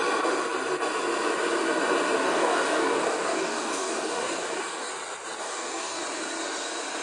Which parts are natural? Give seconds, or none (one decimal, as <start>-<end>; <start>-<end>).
0.0-2.2; 4.9-5.4; 6.0-7.0